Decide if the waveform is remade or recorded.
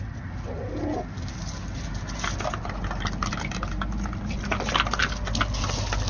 recorded